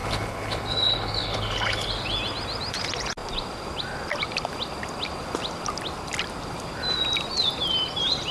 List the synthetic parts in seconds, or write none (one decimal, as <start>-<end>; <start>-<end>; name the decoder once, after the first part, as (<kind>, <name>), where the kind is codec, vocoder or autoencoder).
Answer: 0.0-1.9 (codec, HILCodec)